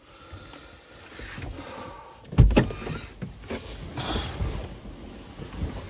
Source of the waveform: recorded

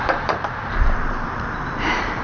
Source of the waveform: remade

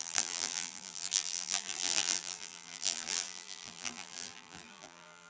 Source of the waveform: remade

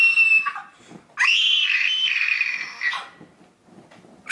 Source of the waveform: recorded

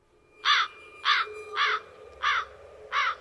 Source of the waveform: recorded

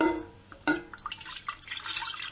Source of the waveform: remade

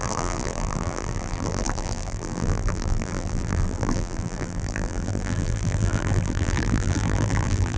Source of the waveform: remade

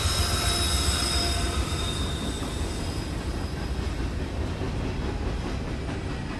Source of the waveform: recorded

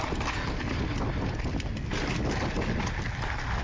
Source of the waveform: recorded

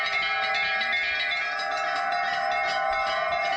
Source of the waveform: remade